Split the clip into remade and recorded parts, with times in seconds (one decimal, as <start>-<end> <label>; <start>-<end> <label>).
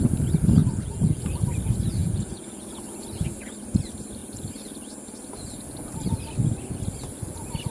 0.0-0.6 recorded; 0.6-1.2 remade; 1.2-2.0 recorded; 2.0-2.6 remade; 2.6-7.7 recorded